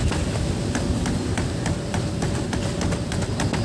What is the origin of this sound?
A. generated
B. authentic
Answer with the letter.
A